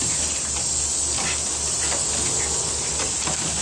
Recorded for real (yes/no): yes